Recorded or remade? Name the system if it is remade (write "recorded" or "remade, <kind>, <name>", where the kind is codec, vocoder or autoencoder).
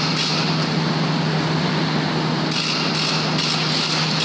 recorded